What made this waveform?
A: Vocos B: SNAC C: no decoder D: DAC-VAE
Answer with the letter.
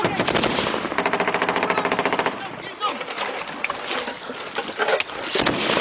C